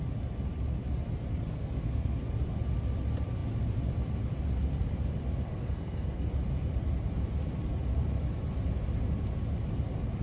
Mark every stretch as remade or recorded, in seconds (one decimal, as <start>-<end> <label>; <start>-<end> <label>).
0.0-1.5 recorded; 1.5-2.2 remade; 2.2-5.5 recorded; 5.5-6.3 remade; 6.3-10.2 recorded

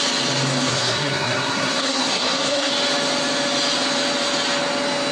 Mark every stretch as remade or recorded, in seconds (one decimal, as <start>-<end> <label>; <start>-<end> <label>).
0.0-0.7 recorded; 0.7-2.7 remade; 2.7-5.1 recorded

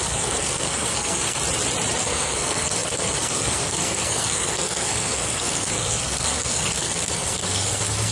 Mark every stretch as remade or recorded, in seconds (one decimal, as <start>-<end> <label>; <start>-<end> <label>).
0.0-1.4 remade; 1.4-2.0 recorded; 2.0-8.1 remade

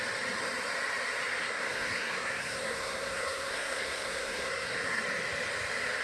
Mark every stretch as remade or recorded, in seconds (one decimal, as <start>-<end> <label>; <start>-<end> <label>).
0.0-1.4 recorded; 1.4-5.0 remade; 5.0-6.0 recorded

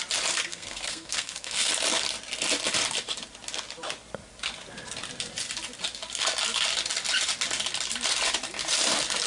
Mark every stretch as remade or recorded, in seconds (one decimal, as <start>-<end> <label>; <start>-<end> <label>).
0.0-0.5 recorded; 0.5-1.7 remade; 1.7-9.3 recorded

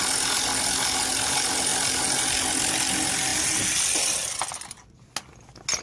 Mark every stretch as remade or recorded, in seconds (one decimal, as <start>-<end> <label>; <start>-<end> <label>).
0.0-5.8 recorded

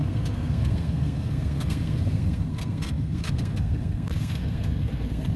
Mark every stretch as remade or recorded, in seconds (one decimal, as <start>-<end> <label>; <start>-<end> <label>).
0.0-5.4 remade

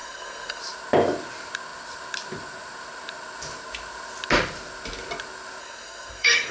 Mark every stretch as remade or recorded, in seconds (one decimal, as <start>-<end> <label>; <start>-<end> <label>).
0.0-0.6 remade; 0.6-5.6 recorded; 5.6-6.5 remade